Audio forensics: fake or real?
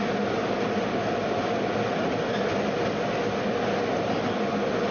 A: real